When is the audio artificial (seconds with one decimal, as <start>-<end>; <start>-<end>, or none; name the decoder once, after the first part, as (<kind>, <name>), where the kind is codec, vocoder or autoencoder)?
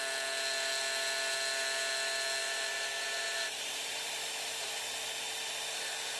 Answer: 2.4-4.8 (vocoder, BigVGAN v2)